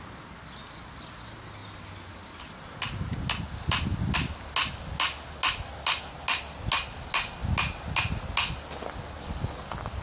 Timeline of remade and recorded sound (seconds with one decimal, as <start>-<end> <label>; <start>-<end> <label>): 0.0-10.0 recorded